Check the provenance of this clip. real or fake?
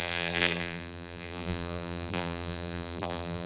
fake